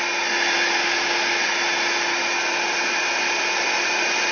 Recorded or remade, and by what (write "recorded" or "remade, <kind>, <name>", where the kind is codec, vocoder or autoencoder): recorded